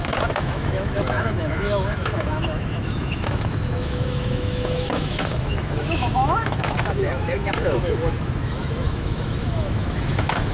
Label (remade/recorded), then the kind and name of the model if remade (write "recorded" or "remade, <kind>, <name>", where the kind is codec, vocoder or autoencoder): remade, autoencoder, DAC-VAE